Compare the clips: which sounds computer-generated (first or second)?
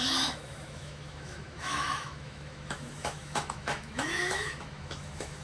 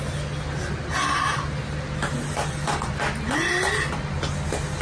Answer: first